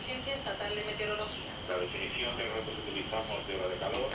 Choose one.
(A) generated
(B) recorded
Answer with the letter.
B